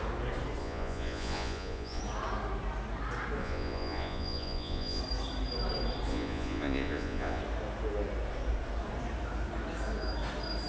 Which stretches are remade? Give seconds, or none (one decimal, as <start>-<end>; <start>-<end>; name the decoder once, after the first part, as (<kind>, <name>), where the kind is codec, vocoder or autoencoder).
0.6-2.0 (vocoder, Vocos); 3.4-5.0; 6.1-7.4